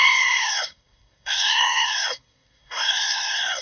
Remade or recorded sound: remade